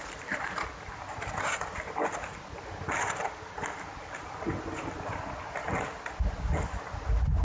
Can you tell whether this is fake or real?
real